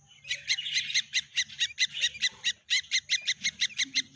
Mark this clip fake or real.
real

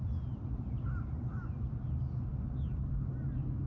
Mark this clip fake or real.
real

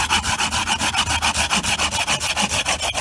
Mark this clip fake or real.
real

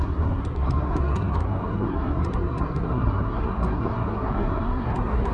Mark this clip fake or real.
fake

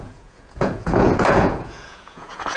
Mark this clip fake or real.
fake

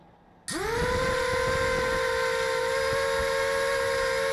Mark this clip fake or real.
real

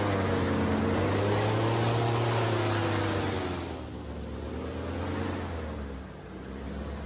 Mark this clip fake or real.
real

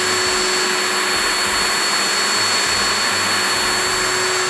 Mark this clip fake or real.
real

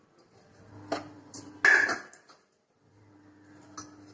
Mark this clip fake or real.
real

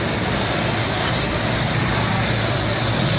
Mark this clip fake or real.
real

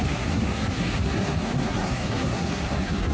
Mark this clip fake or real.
fake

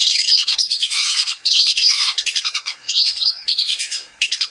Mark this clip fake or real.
fake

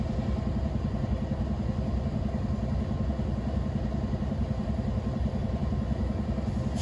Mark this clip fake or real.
real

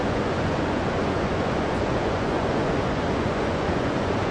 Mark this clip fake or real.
fake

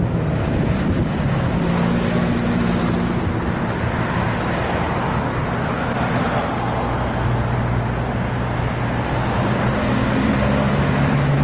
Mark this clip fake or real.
real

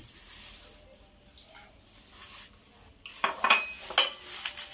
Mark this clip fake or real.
real